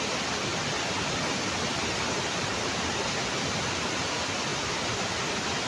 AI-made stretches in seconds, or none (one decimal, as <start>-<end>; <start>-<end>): none